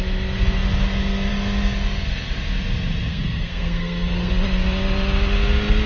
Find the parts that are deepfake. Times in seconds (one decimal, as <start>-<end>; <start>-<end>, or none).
3.1-4.3